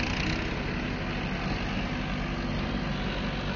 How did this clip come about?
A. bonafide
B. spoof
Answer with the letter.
A